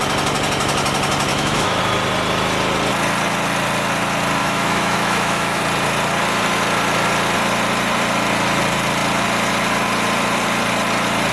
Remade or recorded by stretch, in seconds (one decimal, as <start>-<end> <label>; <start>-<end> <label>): 0.0-1.3 recorded; 1.3-1.8 remade; 1.8-4.4 recorded; 4.4-5.6 remade; 5.6-11.3 recorded